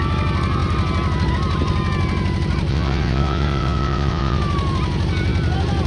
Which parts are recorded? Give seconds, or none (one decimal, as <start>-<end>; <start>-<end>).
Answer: 0.0-2.7; 4.4-5.9